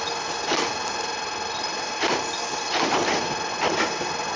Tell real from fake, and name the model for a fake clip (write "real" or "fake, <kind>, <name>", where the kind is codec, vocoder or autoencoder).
real